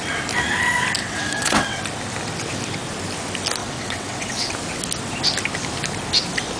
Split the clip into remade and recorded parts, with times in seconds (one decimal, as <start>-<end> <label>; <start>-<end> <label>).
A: 0.0-1.0 recorded; 1.0-1.8 remade; 1.8-3.6 recorded; 3.6-4.5 remade; 4.5-6.6 recorded